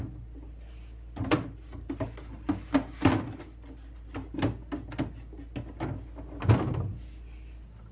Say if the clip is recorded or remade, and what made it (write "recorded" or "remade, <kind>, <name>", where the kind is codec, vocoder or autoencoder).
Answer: recorded